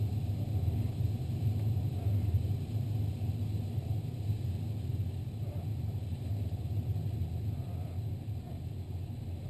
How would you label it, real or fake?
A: real